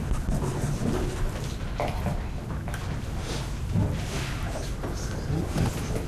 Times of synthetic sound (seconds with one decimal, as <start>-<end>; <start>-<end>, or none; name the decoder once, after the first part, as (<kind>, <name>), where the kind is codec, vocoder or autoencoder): none